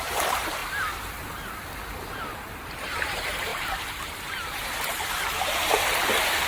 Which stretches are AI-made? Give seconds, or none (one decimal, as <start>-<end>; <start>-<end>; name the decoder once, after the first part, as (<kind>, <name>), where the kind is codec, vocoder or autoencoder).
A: 0.0-0.6 (vocoder, BigVGAN v2); 2.2-6.5